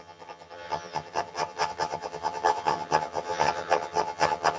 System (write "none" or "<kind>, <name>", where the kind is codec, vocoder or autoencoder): vocoder, HiFi-GAN